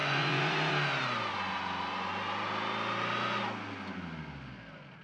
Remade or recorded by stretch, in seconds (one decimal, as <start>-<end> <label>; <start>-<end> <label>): 0.0-0.7 remade; 0.7-5.0 recorded